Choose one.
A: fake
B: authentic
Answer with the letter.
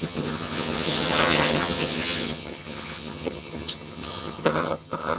A